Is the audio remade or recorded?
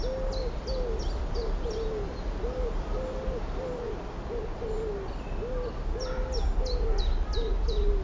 recorded